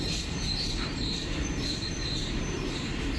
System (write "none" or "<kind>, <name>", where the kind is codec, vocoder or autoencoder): vocoder, BigVGAN v2